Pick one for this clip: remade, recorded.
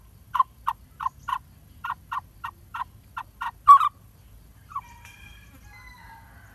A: recorded